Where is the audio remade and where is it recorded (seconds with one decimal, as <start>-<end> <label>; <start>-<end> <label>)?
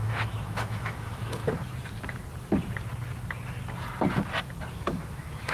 0.0-1.4 remade; 1.4-4.7 recorded; 4.7-5.5 remade